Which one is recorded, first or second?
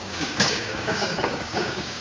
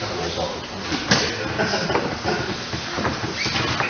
second